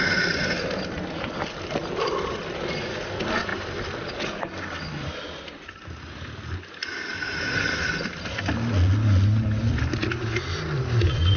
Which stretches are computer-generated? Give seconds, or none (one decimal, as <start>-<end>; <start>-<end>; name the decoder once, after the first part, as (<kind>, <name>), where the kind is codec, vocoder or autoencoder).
none